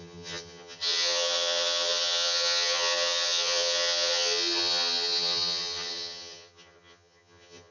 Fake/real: fake